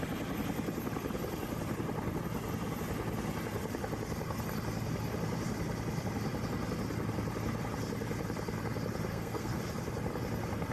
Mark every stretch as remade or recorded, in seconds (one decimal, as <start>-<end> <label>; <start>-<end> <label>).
0.0-9.1 recorded; 9.1-9.6 remade; 9.6-10.7 recorded